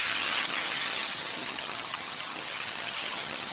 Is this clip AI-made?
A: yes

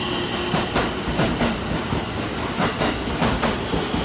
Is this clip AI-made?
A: no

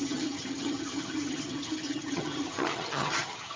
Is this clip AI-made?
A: yes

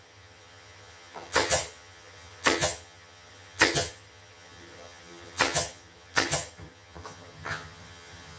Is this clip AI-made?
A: yes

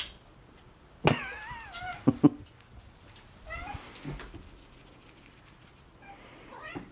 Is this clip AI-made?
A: no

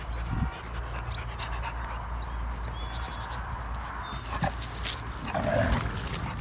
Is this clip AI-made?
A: no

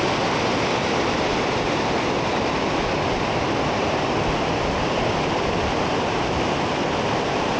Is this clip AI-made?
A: no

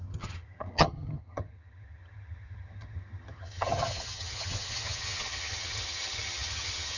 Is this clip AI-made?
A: yes